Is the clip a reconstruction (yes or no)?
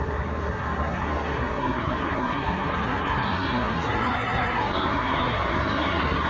yes